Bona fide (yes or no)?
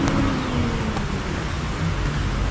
yes